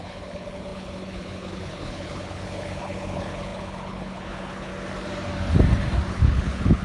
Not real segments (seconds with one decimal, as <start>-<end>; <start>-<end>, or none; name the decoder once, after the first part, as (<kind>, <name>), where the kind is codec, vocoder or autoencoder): 0.0-4.7 (codec, HILCodec); 6.1-6.8